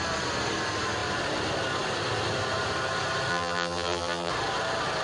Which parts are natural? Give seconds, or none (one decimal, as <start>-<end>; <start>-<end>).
0.0-3.3; 4.3-5.0